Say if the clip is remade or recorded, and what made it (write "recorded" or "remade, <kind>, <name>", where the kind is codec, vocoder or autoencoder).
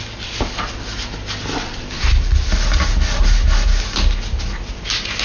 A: recorded